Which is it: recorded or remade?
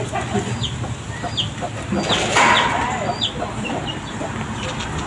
recorded